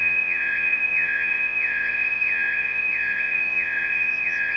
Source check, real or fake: fake